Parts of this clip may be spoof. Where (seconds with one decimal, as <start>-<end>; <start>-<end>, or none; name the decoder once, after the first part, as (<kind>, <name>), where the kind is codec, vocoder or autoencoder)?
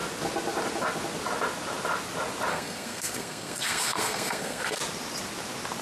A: 2.5-4.8 (codec, SNAC)